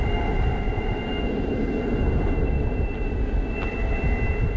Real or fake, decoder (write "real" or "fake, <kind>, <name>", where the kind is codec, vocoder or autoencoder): real